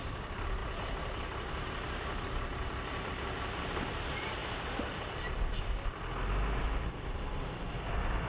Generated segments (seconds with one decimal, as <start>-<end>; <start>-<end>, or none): none